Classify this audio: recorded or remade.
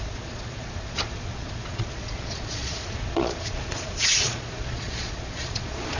remade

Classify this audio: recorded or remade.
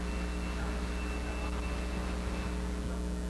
recorded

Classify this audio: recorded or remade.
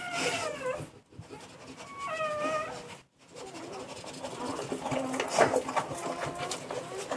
recorded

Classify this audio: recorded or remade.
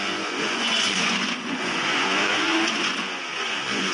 remade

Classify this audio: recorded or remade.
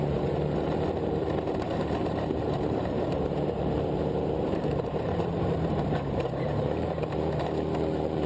remade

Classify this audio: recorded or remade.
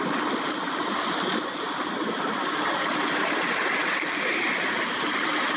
recorded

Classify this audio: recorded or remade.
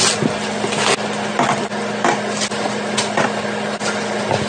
recorded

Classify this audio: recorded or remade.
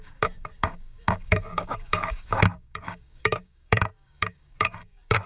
remade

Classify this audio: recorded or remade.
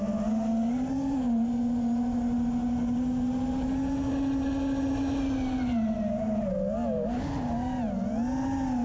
recorded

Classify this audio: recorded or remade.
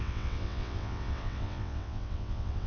remade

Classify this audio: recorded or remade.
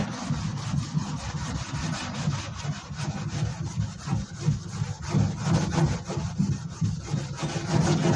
recorded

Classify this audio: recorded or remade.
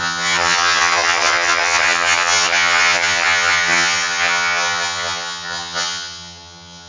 remade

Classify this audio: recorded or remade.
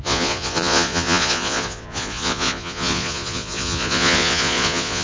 remade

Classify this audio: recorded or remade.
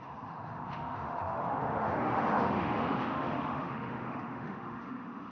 remade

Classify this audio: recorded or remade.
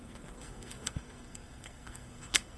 remade